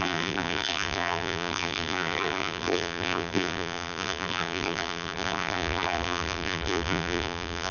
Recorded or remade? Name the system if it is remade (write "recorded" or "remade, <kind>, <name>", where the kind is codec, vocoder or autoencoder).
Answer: remade, vocoder, BigVGAN v2